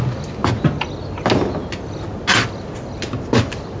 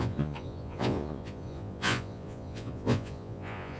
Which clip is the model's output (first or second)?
second